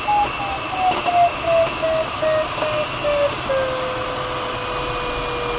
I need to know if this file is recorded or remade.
recorded